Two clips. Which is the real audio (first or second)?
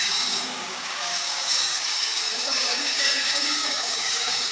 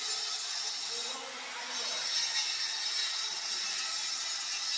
second